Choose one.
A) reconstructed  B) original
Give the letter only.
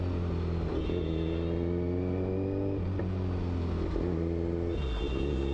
B